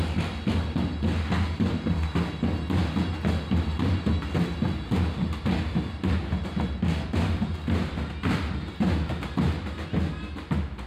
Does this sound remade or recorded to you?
recorded